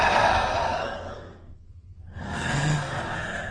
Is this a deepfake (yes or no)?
yes